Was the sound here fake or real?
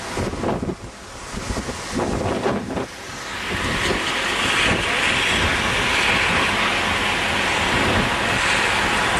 real